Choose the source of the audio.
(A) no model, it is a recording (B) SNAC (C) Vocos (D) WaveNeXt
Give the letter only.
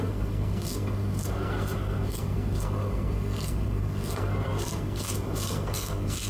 B